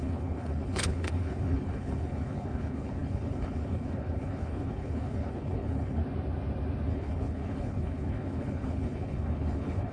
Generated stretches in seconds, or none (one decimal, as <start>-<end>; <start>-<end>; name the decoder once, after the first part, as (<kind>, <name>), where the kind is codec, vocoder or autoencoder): 0.0-6.0 (codec, HILCodec); 6.9-9.9